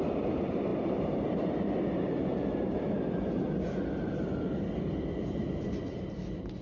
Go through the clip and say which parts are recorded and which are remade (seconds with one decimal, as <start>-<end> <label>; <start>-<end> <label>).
0.0-6.6 recorded